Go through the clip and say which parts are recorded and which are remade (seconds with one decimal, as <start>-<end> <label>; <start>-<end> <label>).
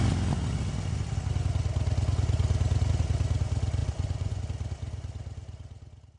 0.0-3.8 recorded; 3.8-4.4 remade; 4.4-6.2 recorded